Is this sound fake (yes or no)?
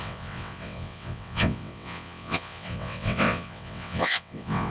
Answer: yes